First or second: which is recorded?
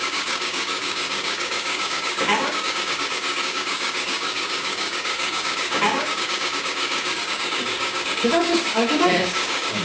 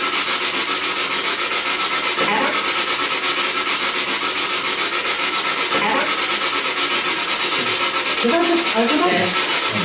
second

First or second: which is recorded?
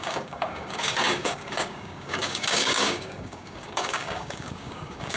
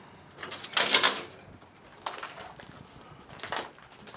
second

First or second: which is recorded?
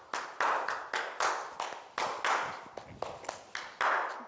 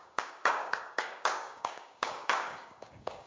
first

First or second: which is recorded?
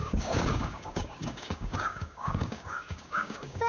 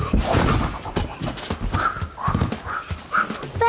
second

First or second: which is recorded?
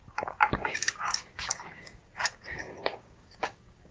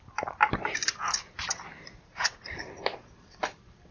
second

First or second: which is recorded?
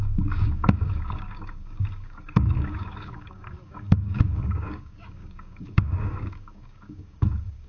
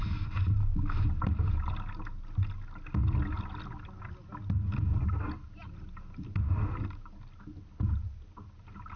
second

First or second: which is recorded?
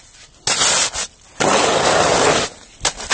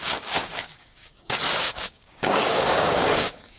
first